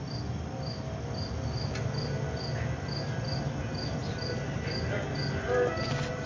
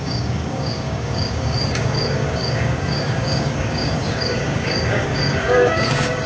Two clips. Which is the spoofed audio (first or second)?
second